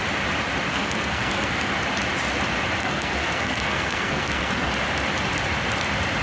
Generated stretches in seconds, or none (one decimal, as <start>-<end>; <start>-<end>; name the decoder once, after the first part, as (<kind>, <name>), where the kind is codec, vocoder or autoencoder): 0.7-1.7 (codec, SNAC); 2.8-4.7